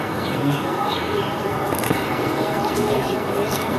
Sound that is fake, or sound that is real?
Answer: fake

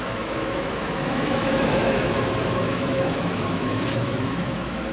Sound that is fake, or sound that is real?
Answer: fake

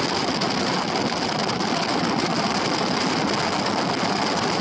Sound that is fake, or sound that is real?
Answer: real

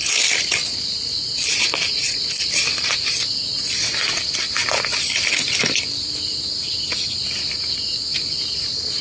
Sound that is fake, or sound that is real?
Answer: real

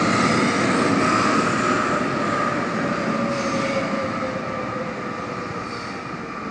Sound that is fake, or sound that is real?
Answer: real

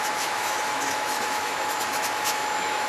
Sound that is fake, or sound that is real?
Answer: fake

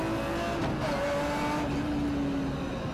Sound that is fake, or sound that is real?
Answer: real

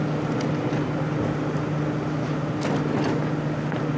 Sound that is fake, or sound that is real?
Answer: real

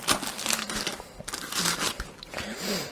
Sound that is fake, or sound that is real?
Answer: real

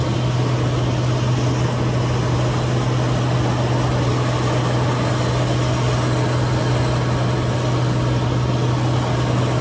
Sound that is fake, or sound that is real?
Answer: real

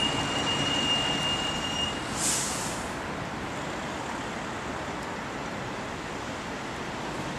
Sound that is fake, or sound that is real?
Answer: real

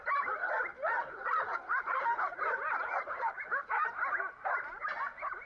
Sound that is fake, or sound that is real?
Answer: real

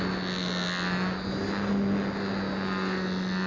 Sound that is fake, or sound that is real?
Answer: real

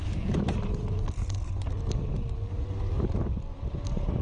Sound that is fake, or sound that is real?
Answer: real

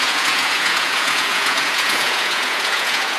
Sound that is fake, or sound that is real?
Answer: fake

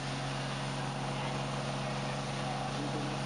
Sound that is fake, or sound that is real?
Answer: real